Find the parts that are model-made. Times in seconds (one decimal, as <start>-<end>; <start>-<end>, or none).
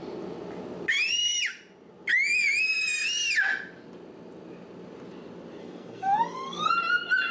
5.6-6.7